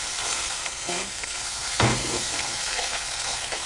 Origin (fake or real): fake